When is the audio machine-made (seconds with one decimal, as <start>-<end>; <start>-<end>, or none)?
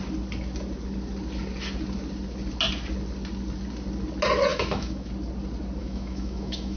4.5-5.1; 5.8-6.8